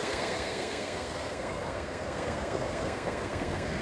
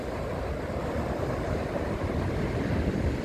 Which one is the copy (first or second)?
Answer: first